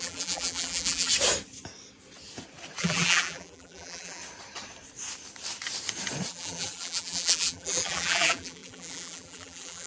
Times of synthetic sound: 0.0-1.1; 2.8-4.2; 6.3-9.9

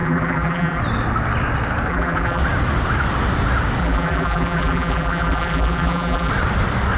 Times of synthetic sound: 0.0-0.8; 1.9-2.4; 3.8-6.3

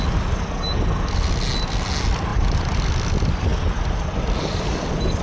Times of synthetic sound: 2.3-2.9; 3.5-4.4

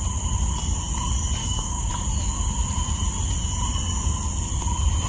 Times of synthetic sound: 1.4-1.9

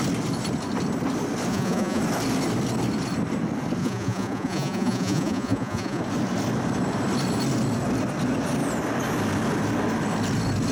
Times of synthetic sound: 1.5-2.0; 3.8-6.0

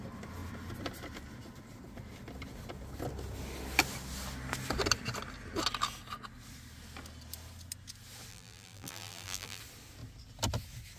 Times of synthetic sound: 8.3-9.6

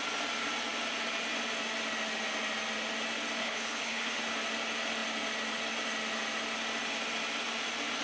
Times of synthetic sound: 3.4-4.2

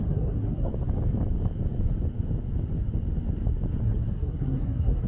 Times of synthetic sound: 0.0-0.7; 3.8-5.1